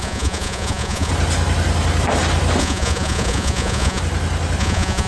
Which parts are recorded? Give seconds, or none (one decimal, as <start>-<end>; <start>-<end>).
1.1-2.6; 4.0-4.6